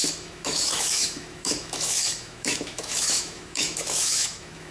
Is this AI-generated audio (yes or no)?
yes